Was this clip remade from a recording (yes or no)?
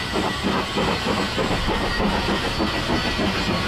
no